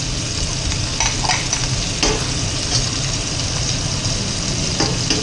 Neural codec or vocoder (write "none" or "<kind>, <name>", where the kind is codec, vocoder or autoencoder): none